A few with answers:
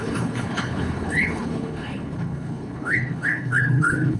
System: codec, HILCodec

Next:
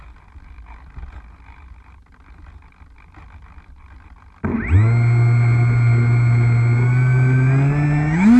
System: none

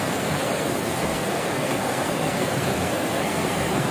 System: codec, SNAC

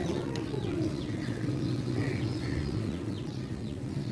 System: vocoder, WaveNeXt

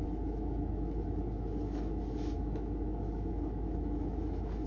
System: autoencoder, DAC-VAE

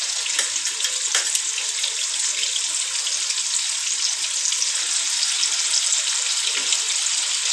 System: none